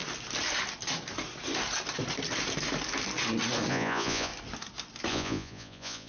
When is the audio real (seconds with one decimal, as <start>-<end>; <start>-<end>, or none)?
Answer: 0.0-3.7; 4.3-5.1